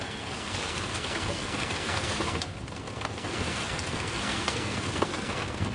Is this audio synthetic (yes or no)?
yes